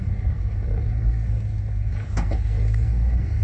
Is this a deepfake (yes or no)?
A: yes